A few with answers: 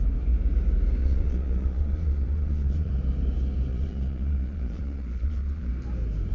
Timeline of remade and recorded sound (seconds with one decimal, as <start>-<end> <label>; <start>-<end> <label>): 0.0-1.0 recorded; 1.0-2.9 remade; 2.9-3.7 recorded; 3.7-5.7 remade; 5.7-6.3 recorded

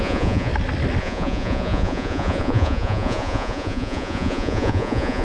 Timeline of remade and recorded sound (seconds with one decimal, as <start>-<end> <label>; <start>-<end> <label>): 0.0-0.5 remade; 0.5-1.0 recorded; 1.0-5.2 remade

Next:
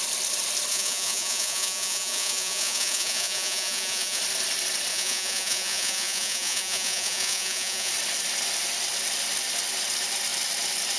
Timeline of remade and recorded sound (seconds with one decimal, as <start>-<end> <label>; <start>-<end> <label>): 0.0-0.7 recorded; 0.7-4.2 remade; 4.2-4.9 recorded; 4.9-7.9 remade; 7.9-11.0 recorded

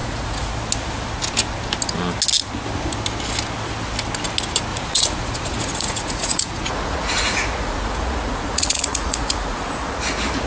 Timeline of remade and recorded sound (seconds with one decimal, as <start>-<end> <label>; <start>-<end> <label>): 0.0-0.5 remade; 0.5-4.7 recorded; 4.7-9.7 remade; 9.7-10.5 recorded

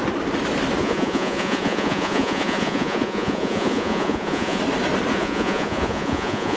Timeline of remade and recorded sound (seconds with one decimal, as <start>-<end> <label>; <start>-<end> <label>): 0.0-0.8 recorded; 0.8-4.6 remade; 4.6-5.1 recorded; 5.1-6.6 remade

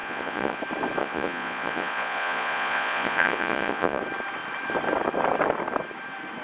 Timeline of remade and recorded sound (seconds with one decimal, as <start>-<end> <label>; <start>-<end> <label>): 0.0-0.6 remade; 0.6-1.0 recorded; 1.0-4.0 remade; 4.0-6.4 recorded

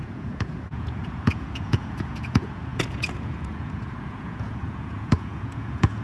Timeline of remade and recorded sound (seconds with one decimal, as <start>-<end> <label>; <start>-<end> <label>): 0.0-6.0 remade

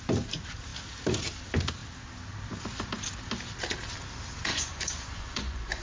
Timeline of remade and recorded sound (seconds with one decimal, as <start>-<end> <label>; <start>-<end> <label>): 0.0-4.5 recorded; 4.5-5.8 remade